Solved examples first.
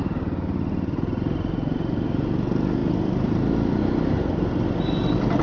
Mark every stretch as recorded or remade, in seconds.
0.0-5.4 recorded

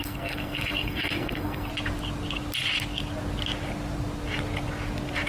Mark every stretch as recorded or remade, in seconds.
0.0-1.7 remade; 1.7-5.3 recorded

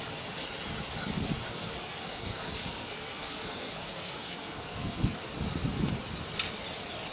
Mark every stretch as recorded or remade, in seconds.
0.0-1.5 recorded; 1.5-5.2 remade; 5.2-7.1 recorded

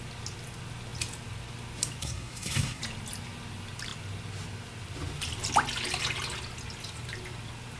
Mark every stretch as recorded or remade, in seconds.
0.0-2.0 recorded; 2.0-2.8 remade; 2.8-7.8 recorded

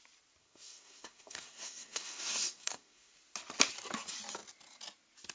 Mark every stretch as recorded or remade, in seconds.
0.0-0.4 recorded; 0.4-3.1 remade; 3.1-5.3 recorded

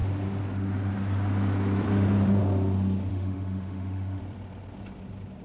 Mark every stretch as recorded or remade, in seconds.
0.0-3.1 recorded; 3.1-4.2 remade; 4.2-5.4 recorded

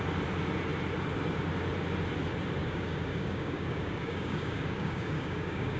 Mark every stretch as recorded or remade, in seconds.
0.0-2.6 recorded; 2.6-5.8 remade

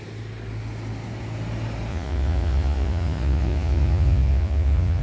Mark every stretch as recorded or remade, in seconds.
0.0-1.9 recorded; 1.9-5.0 remade